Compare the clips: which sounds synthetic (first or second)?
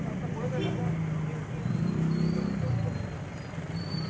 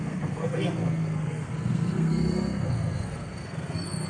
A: second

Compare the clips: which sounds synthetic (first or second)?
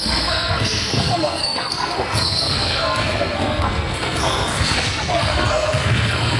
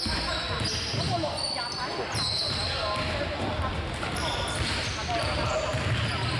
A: first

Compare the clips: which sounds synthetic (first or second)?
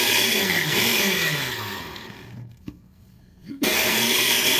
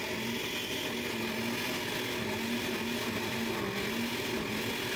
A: first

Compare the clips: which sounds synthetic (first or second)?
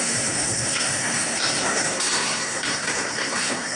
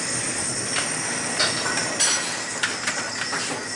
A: first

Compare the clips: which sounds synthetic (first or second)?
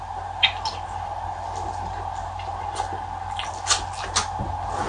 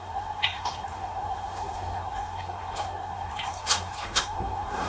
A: second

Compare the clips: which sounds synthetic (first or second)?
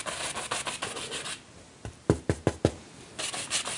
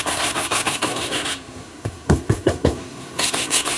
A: second